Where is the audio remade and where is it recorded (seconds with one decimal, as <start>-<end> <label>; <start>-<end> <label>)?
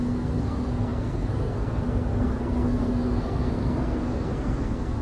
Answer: 0.0-5.0 remade